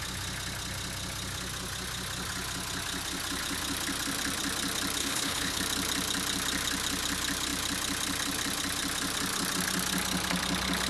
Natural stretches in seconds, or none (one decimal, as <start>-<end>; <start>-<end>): 0.0-5.0; 5.6-10.9